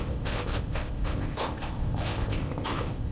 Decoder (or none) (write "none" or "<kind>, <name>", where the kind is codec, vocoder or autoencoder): codec, ZipCodec